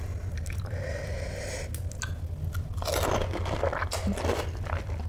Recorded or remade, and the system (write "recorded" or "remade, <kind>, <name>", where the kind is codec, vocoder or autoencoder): recorded